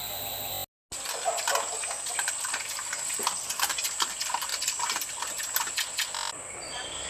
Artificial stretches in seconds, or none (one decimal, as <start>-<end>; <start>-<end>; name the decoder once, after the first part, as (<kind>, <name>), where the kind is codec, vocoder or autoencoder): none